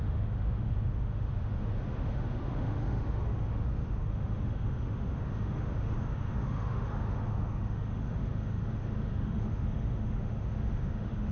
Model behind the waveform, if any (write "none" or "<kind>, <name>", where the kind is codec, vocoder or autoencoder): autoencoder, DAC-VAE